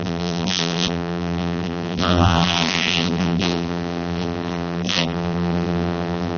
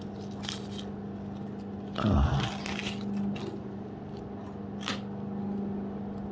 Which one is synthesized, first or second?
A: first